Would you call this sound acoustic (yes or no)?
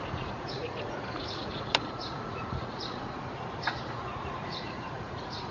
no